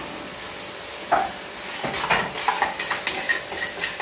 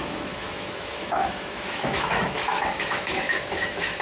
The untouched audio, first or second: first